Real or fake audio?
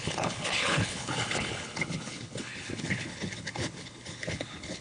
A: fake